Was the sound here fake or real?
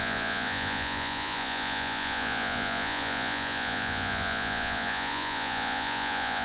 fake